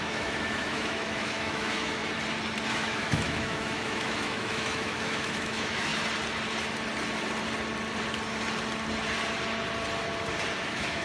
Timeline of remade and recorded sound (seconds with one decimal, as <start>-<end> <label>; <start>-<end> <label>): 0.0-2.0 remade; 2.0-2.7 recorded; 2.7-5.9 remade; 5.9-10.6 recorded; 10.6-11.0 remade